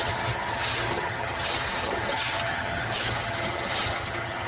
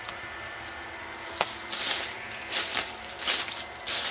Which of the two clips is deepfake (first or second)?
first